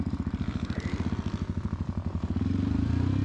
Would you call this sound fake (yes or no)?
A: no